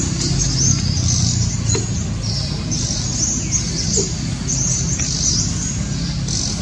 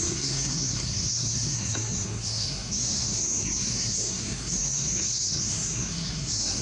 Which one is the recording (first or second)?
first